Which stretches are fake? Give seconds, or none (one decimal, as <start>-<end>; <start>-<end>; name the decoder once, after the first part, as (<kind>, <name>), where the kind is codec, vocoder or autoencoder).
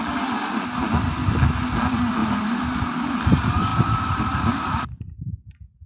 2.2-3.0 (vocoder, BigVGAN v2); 3.7-5.9